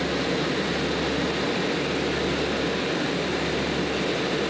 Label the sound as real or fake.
real